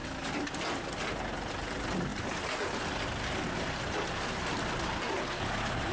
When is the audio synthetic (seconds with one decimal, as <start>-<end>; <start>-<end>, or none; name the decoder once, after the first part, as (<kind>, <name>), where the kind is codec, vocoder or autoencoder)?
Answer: none

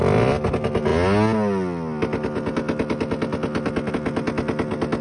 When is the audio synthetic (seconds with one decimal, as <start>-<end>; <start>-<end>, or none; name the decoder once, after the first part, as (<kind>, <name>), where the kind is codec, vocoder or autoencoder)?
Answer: none

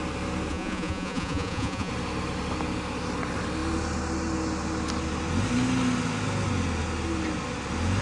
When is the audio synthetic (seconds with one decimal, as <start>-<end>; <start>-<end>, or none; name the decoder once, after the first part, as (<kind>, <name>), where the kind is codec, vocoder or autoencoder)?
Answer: 0.5-1.9 (vocoder, Vocos)

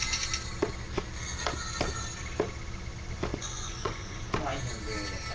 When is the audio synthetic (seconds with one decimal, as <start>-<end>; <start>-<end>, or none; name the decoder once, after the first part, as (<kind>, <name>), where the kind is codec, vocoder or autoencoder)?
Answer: 3.3-4.2 (vocoder, Vocos)

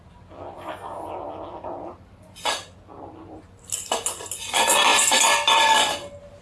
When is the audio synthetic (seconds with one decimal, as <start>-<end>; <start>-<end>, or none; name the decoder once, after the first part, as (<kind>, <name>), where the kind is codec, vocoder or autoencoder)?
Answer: none

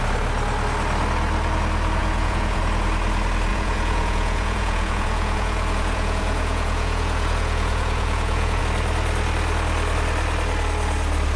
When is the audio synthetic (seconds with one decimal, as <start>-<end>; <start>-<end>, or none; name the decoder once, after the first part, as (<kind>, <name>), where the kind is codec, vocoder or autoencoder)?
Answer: 2.0-2.6 (vocoder, Vocos); 3.5-8.6

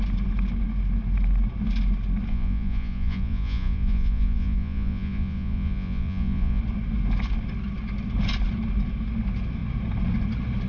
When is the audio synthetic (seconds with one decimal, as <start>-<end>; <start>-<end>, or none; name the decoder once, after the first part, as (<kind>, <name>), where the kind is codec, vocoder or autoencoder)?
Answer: 2.3-6.6 (vocoder, Vocos)